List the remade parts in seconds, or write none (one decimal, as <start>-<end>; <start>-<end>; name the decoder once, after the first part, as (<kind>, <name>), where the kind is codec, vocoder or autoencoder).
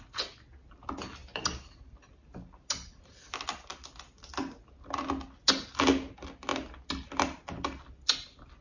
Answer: none